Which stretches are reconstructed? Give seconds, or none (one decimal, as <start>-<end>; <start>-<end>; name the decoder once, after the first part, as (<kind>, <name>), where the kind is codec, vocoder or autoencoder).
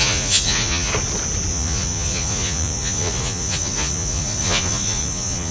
0.0-0.9 (vocoder, Vocos); 1.5-5.5